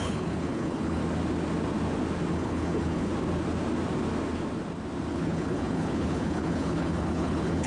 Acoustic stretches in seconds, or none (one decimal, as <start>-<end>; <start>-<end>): 1.0-2.3; 3.1-5.1